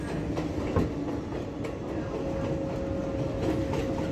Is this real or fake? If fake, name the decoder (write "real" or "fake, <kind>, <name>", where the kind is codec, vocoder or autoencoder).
real